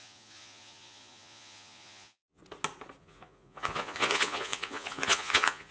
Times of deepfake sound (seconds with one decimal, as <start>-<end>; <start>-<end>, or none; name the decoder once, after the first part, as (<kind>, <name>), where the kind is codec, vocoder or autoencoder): 0.0-2.4 (vocoder, Vocos); 3.0-5.7